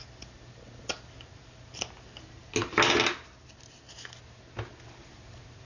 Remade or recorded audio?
recorded